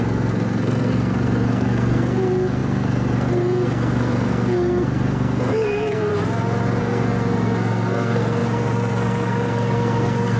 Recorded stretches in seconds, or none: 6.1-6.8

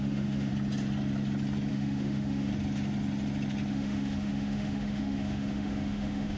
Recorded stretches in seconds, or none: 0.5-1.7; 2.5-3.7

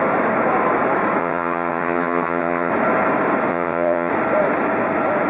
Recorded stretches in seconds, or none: 0.0-1.2; 2.7-3.5; 4.1-5.3

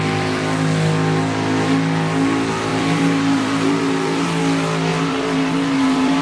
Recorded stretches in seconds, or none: 0.0-2.7; 4.4-4.9